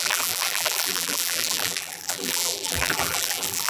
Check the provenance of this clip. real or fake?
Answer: fake